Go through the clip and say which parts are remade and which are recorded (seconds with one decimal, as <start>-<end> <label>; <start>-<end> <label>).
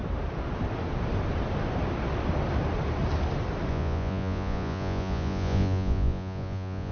0.0-3.7 recorded; 3.7-6.9 remade